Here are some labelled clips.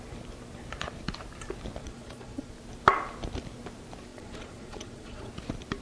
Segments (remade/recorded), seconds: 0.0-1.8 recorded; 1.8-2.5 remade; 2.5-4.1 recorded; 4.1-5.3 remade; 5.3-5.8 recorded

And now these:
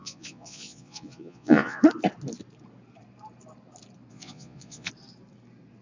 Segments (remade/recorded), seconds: 0.0-1.8 remade; 1.8-4.1 recorded; 4.1-4.9 remade; 4.9-5.8 recorded